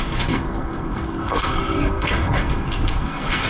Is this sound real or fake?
fake